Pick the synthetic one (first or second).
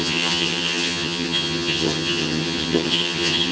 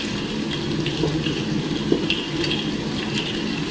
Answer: first